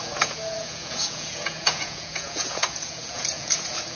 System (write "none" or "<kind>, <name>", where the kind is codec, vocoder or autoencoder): vocoder, Vocos